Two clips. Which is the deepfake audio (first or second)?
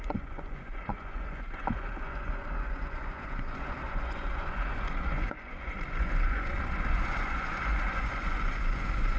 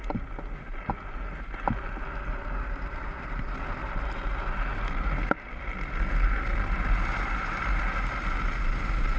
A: first